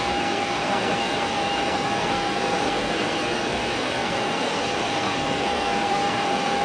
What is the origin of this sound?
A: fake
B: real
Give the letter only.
A